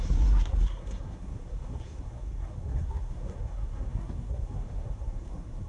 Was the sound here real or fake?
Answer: fake